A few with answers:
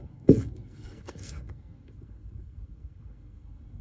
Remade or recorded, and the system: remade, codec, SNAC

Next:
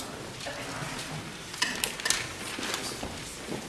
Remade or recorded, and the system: recorded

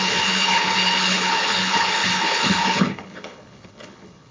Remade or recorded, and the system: remade, codec, HILCodec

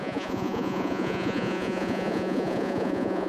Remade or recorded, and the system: remade, vocoder, Vocos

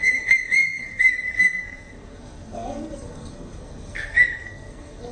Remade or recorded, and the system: remade, codec, SNAC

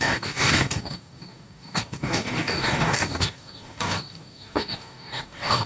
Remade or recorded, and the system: remade, codec, DAC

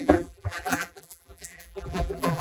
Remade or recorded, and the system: remade, vocoder, BigVGAN v2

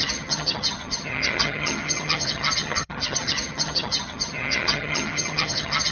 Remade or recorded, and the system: remade, vocoder, HiFi-GAN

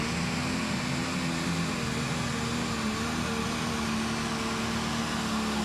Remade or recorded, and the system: recorded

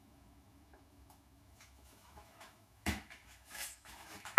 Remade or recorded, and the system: remade, autoencoder, DAC-VAE